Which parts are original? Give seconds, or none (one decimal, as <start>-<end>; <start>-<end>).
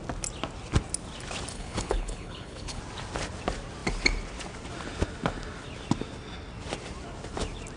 0.0-1.5; 2.8-7.8